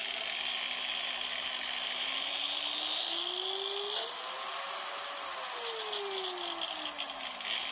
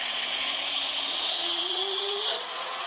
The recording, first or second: first